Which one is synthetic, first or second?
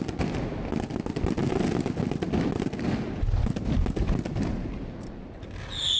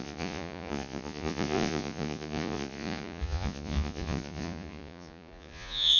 second